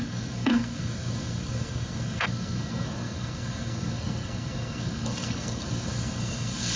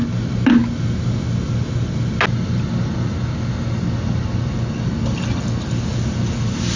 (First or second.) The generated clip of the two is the first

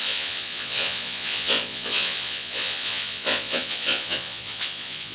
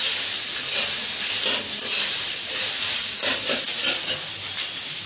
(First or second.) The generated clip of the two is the first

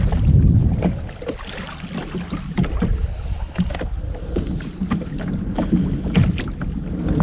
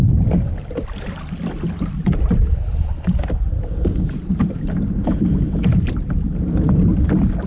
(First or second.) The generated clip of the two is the second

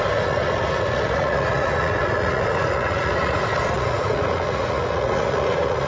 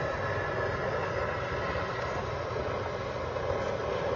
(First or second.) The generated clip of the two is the first